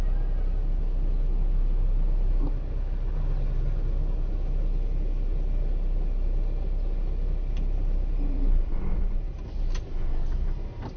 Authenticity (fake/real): real